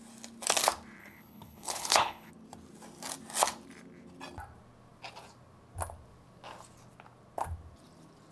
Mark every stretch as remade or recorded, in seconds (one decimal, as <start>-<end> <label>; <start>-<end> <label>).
0.0-1.0 recorded; 1.0-2.3 remade; 2.3-8.3 recorded